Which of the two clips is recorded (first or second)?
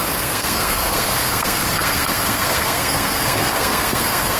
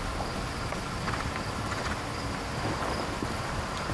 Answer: second